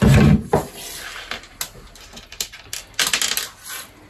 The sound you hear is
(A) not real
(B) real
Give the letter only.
B